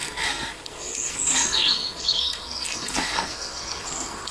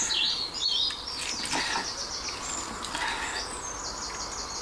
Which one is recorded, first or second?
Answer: second